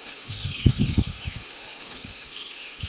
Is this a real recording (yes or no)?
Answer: no